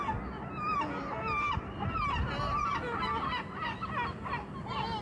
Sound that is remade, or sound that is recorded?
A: recorded